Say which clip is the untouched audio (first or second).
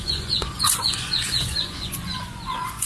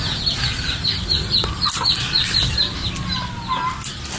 second